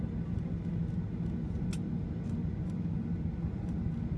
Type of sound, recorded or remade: recorded